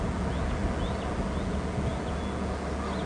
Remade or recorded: recorded